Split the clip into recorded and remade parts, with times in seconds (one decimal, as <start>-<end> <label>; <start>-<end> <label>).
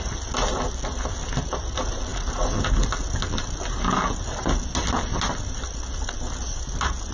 0.0-7.1 recorded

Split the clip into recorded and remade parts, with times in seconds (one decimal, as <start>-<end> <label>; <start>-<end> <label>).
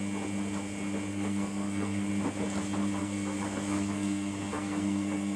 0.0-1.1 recorded; 1.1-2.1 remade; 2.1-3.0 recorded; 3.0-5.4 remade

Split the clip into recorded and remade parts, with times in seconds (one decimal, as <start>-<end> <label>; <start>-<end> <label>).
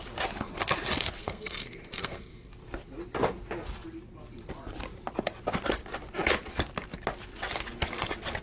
0.0-1.2 recorded; 1.2-2.5 remade; 2.5-8.4 recorded